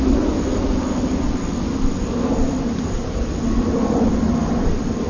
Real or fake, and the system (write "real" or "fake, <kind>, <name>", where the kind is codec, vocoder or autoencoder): real